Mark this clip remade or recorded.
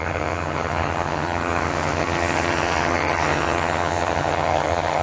remade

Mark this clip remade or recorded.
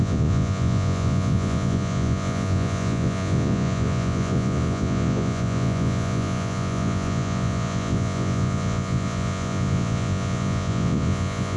remade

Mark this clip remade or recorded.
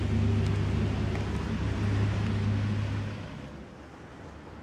recorded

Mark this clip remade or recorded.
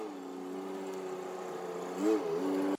recorded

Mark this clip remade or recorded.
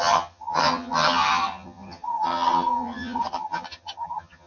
remade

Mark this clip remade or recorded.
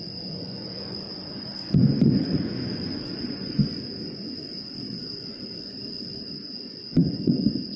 remade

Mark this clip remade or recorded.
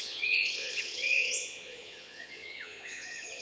remade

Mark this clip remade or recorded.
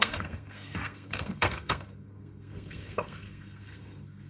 remade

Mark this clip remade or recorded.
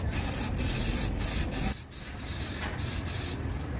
recorded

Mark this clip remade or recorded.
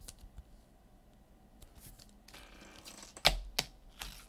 recorded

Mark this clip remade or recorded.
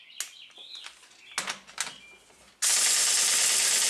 recorded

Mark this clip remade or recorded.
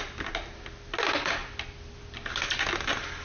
recorded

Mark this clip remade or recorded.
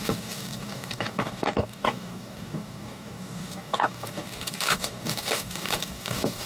remade